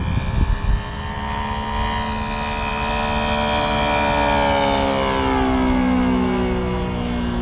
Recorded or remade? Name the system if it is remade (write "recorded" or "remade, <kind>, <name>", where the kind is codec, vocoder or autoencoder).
recorded